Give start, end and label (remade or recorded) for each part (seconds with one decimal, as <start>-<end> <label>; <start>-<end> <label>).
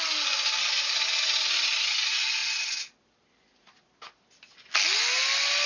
0.0-5.7 recorded